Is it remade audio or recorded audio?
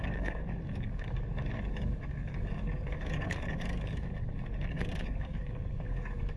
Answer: remade